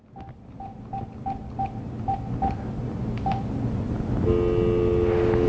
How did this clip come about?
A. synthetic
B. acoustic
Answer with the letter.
B